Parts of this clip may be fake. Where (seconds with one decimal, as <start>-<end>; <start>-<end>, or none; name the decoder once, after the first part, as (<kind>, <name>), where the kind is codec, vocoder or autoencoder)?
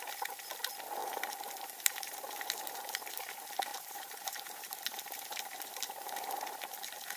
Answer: 1.0-3.1 (vocoder, BigVGAN v2); 3.7-6.3